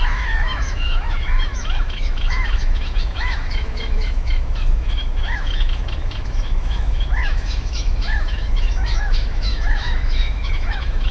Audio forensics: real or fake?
fake